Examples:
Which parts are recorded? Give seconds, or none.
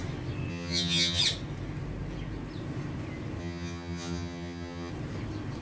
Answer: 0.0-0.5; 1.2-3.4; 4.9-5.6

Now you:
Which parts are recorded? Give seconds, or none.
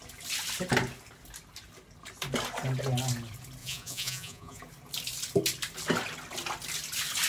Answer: 0.0-3.6; 4.6-7.3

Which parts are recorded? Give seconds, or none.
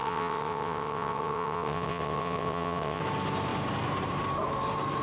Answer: 3.0-5.0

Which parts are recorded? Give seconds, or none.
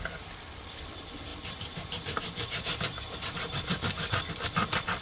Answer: 0.0-1.3; 4.3-5.0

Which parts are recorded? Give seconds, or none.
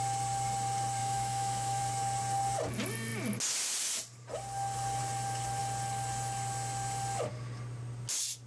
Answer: 0.0-1.0; 1.8-8.5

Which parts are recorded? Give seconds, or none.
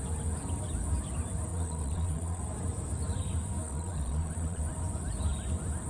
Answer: 0.0-1.5; 2.4-3.6; 4.6-5.9